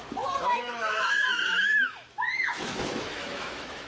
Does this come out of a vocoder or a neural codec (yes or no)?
yes